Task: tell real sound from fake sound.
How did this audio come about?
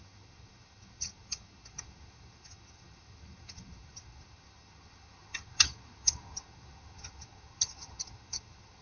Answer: fake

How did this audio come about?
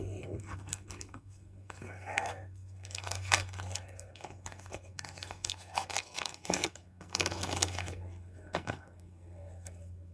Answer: fake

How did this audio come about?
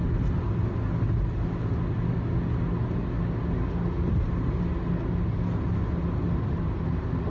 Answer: real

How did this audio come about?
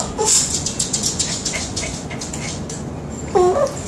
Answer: fake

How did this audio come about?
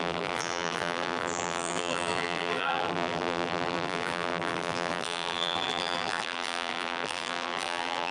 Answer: fake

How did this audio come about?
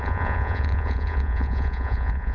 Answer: fake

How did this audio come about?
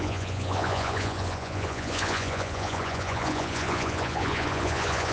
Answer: fake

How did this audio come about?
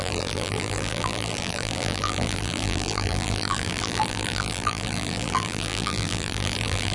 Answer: fake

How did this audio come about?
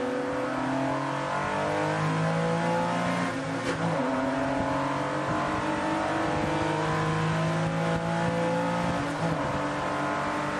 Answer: real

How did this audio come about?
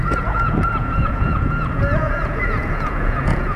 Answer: fake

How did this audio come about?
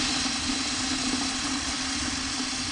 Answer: real